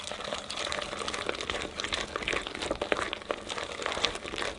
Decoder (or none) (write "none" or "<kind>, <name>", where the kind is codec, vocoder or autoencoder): none